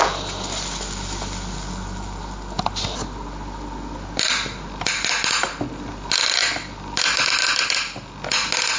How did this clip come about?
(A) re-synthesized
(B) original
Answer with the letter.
B